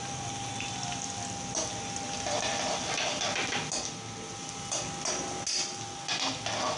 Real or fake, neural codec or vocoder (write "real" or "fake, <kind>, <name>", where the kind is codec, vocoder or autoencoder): real